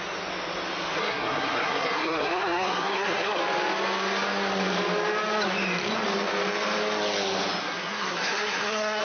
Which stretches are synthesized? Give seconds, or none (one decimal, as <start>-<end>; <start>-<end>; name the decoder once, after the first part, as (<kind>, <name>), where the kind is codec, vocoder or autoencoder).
1.0-3.4 (codec, SNAC); 7.6-9.0